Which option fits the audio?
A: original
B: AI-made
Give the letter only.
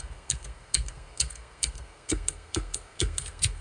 B